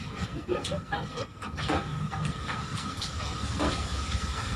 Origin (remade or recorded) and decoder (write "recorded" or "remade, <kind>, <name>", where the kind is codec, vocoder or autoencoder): remade, codec, SNAC